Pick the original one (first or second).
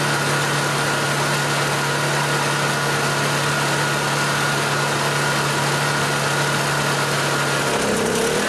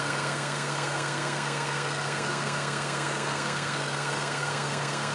first